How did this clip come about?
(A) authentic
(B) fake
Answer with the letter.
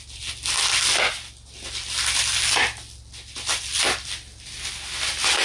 A